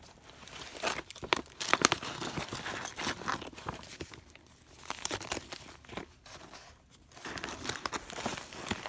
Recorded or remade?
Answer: recorded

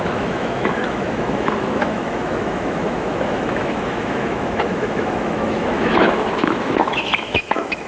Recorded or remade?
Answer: remade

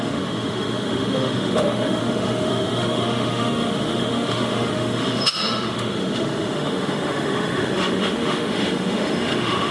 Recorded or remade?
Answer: remade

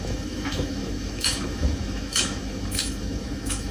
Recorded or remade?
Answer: remade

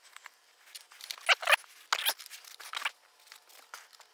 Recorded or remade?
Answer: recorded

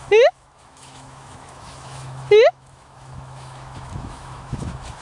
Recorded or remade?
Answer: remade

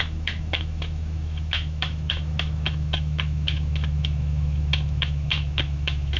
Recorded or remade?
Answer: remade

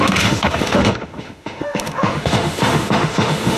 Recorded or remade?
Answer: remade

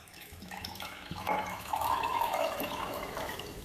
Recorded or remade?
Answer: remade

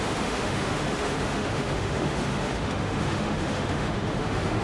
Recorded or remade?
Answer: remade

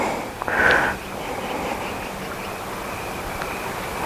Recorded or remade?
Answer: recorded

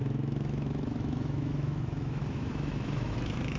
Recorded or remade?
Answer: remade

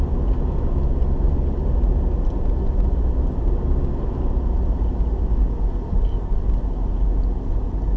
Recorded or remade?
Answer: recorded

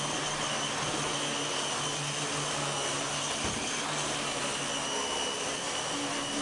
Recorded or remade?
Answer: recorded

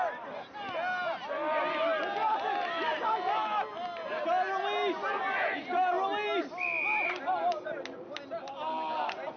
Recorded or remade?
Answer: recorded